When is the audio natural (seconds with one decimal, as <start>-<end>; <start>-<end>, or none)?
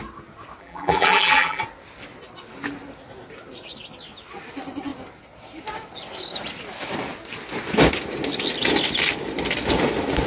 0.0-0.6; 1.6-10.3